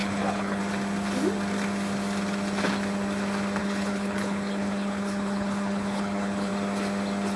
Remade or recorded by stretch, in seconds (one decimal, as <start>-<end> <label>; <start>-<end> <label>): 0.0-0.6 remade; 0.6-3.6 recorded; 3.6-6.5 remade; 6.5-7.4 recorded